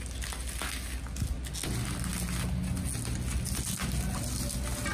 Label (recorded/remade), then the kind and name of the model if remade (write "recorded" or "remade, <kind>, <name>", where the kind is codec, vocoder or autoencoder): recorded